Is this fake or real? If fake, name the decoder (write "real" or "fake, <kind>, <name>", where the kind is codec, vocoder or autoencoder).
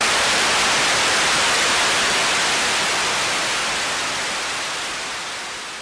real